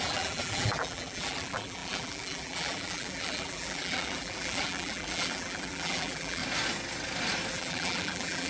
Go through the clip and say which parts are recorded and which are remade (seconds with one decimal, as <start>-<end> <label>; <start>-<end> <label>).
0.0-6.4 remade; 6.4-7.5 recorded; 7.5-8.5 remade